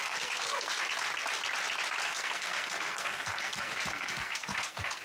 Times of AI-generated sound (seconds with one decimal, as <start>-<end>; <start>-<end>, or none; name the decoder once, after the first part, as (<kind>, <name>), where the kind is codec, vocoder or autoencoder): 0.0-0.7 (codec, SNAC); 2.0-5.0

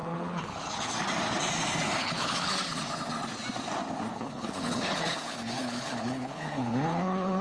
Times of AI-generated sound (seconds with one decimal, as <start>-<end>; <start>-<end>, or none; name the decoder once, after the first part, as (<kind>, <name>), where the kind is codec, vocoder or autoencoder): 0.0-0.9 (codec, HILCodec); 2.0-2.5; 4.1-7.4